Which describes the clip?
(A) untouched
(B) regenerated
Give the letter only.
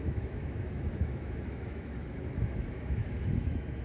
B